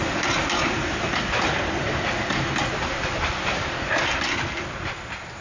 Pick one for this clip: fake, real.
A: real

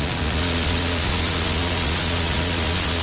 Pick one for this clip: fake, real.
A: fake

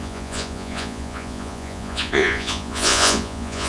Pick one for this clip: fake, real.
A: fake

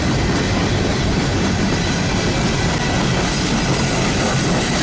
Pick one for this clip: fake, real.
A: real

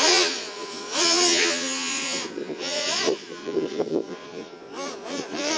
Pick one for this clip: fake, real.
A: fake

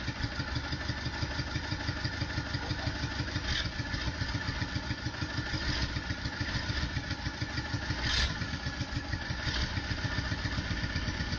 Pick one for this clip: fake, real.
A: fake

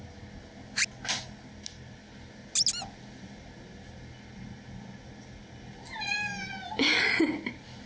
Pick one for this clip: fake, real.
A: real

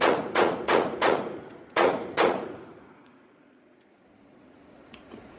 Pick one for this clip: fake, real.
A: fake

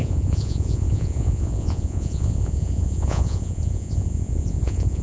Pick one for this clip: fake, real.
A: fake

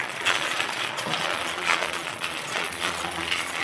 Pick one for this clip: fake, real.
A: fake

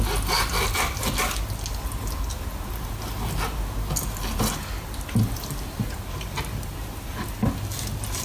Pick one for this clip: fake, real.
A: real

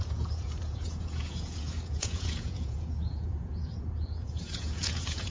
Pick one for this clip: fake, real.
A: fake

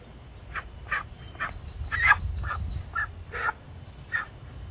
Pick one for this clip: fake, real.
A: real